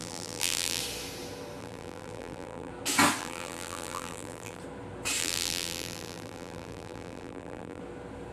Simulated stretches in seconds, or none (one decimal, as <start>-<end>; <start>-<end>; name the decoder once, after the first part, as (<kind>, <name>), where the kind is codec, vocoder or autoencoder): 0.0-0.8 (vocoder, BigVGAN v2); 1.6-2.7; 3.2-4.6; 5.2-7.8